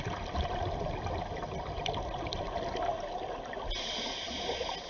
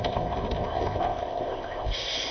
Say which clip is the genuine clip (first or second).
first